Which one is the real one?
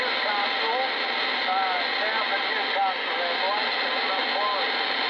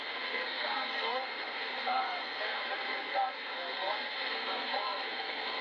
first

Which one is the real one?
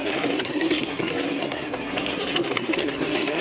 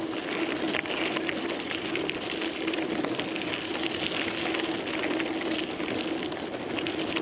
second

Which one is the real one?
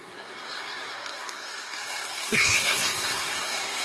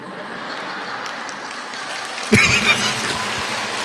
second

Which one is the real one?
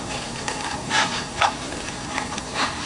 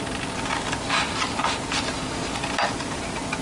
second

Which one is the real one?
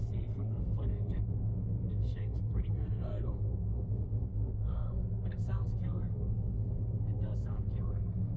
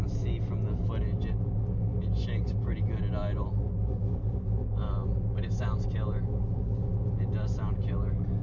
second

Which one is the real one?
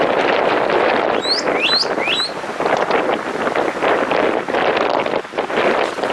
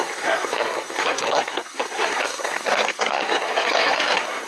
first